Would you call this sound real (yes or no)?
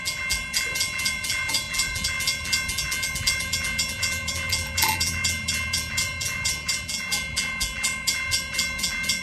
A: no